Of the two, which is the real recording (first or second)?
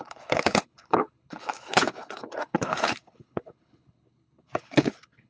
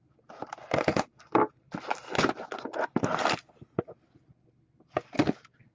second